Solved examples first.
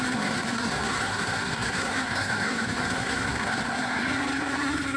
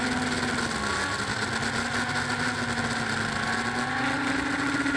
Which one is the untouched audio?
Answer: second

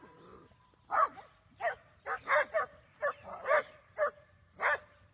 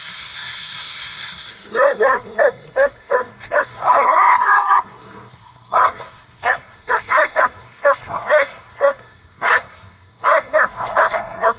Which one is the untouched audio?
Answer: first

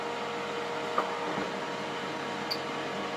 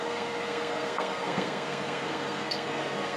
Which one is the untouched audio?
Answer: first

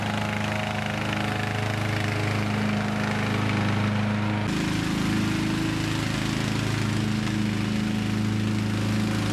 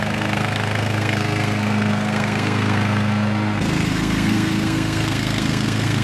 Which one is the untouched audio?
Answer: first